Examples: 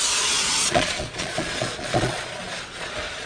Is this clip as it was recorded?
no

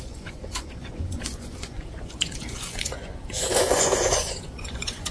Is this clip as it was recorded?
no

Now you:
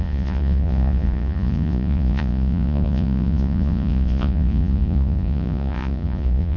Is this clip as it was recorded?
no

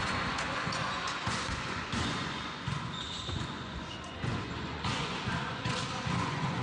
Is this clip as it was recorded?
no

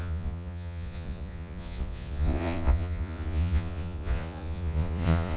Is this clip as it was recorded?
no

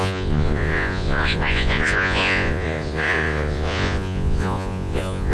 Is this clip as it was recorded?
no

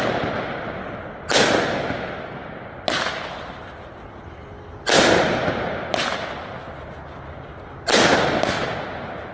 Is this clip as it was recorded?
yes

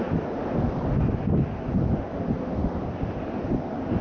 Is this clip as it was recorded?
yes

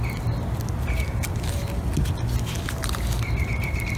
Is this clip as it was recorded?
yes